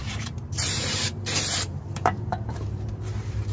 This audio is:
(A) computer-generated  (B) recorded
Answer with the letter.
A